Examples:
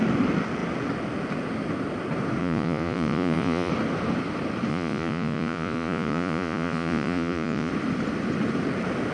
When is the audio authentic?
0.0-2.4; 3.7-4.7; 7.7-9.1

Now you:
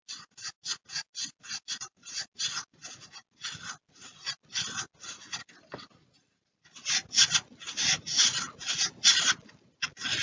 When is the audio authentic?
0.0-10.2

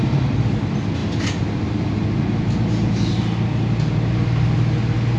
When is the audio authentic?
0.0-5.2